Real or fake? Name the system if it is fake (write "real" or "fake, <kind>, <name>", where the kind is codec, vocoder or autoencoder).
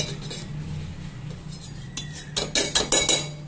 real